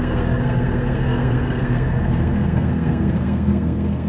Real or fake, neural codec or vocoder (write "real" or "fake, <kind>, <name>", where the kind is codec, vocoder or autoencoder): fake, codec, SNAC